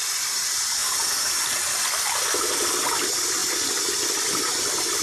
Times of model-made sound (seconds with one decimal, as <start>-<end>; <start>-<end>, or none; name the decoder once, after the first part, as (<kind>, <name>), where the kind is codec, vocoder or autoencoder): none